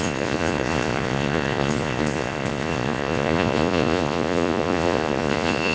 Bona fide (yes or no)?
no